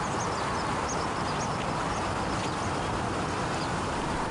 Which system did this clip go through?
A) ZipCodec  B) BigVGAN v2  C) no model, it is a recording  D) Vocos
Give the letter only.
C